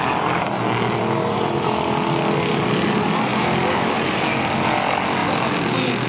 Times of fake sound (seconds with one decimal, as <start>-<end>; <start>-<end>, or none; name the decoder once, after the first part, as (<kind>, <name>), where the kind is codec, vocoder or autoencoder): none